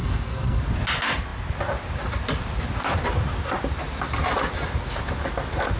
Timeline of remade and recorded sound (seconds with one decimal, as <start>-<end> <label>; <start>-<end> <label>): 0.0-0.6 remade; 0.6-5.8 recorded